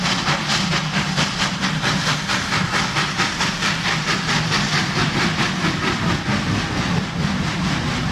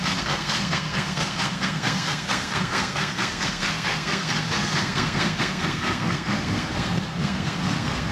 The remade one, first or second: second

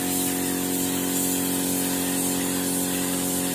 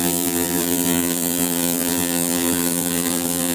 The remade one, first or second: second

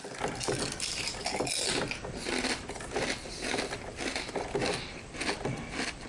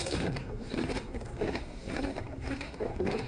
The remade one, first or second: second